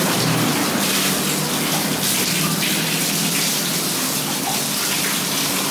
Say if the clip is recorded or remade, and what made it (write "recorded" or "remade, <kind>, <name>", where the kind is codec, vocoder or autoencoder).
recorded